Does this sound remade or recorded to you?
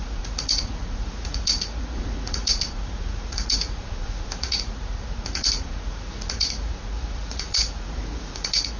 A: remade